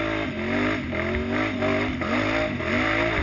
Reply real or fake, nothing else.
real